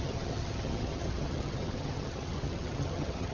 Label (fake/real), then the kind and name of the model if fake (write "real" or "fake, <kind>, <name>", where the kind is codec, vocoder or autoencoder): fake, vocoder, HiFi-GAN